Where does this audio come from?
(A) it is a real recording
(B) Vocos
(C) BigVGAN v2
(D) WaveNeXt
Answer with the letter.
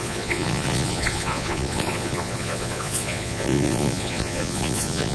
B